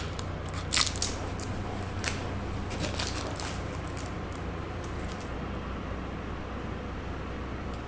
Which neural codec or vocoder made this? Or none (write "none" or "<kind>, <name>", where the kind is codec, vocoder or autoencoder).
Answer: none